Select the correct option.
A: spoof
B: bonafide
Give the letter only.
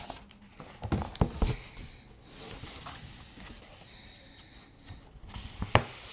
B